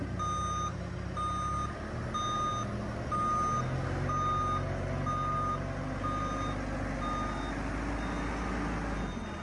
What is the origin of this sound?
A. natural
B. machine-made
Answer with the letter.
A